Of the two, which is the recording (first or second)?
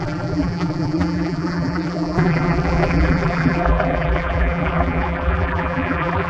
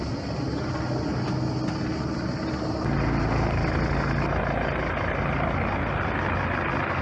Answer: second